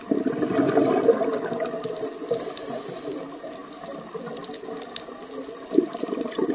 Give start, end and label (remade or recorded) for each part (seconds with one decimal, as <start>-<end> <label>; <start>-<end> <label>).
0.0-6.5 recorded